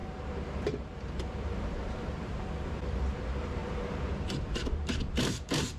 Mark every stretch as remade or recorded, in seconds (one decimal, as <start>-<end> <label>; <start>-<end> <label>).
0.0-3.6 remade; 3.6-4.5 recorded; 4.5-5.8 remade